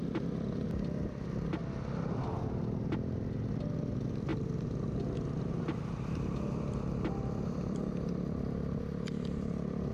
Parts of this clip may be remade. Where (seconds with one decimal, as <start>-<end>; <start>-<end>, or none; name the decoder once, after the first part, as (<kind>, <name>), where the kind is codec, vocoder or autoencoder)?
0.0-1.6 (vocoder, BigVGAN v2); 3.5-4.3; 5.8-9.9